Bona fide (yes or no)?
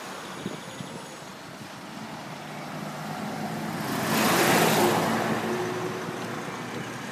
yes